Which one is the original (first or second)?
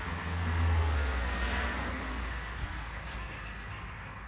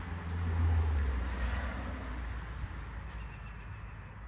second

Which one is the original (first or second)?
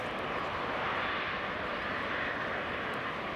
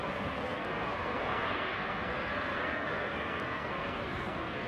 first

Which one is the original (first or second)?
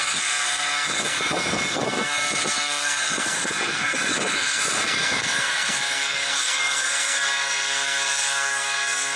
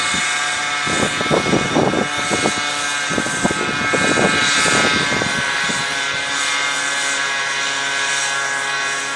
second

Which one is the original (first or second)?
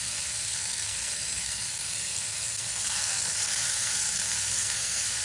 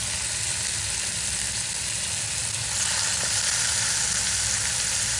second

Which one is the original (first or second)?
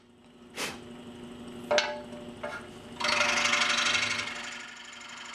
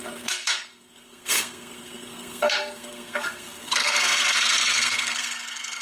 first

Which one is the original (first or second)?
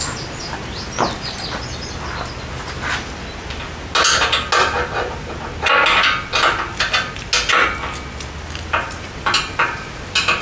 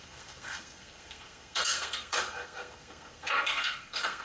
first